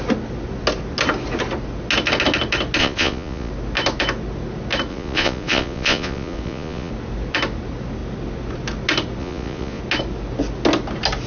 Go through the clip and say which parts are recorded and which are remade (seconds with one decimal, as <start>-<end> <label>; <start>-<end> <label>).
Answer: 0.0-2.8 recorded; 2.8-3.5 remade; 3.5-4.9 recorded; 4.9-6.9 remade; 6.9-9.2 recorded; 9.2-9.8 remade; 9.8-11.3 recorded